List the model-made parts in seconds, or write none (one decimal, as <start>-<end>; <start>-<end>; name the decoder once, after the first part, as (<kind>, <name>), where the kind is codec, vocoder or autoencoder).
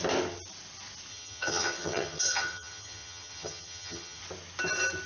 1.1-4.2 (vocoder, HiFi-GAN)